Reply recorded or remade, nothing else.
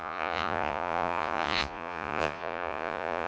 remade